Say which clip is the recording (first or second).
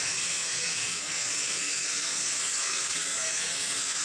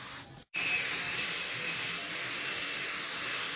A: second